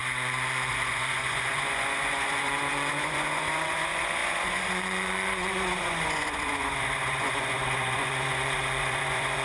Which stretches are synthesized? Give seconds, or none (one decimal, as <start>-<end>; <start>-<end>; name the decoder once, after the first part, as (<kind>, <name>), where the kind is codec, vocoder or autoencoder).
0.7-9.4 (vocoder, Vocos)